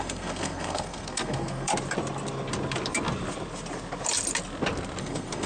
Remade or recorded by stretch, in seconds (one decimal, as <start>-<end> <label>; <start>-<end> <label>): 0.0-1.7 remade; 1.7-5.0 recorded; 5.0-5.5 remade